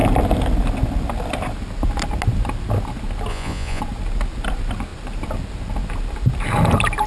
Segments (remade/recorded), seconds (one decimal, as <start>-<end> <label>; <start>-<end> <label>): 0.0-3.3 recorded; 3.3-3.8 remade; 3.8-7.1 recorded